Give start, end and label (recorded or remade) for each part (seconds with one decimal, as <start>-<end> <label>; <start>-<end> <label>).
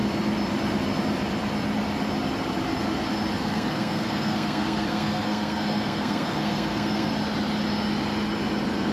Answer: 0.0-3.4 recorded; 3.4-7.1 remade; 7.1-8.9 recorded